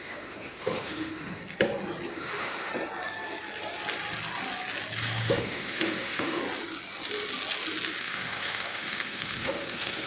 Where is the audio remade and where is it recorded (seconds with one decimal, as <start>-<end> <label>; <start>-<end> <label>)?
0.0-1.4 remade; 1.4-2.1 recorded; 2.1-2.7 remade; 2.7-5.2 recorded; 5.2-6.4 remade; 6.4-8.0 recorded; 8.0-10.1 remade